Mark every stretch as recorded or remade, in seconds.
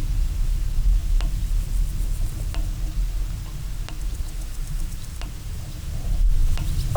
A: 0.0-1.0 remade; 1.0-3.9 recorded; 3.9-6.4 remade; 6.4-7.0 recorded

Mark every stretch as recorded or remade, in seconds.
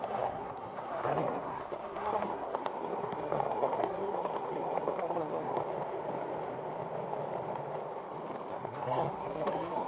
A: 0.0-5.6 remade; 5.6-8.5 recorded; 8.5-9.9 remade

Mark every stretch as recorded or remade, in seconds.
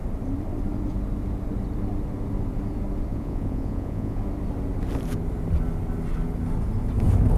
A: 0.0-3.1 recorded; 3.1-4.2 remade; 4.2-7.4 recorded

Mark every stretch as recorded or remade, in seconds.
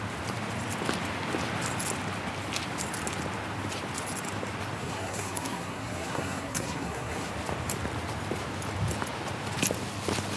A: 0.0-4.8 recorded; 4.8-7.3 remade; 7.3-10.4 recorded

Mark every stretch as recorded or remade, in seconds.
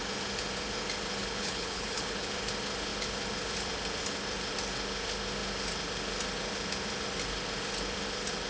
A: 0.0-1.2 recorded; 1.2-2.3 remade; 2.3-8.5 recorded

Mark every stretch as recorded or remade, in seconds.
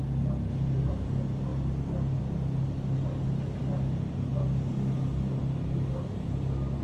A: 0.0-6.8 recorded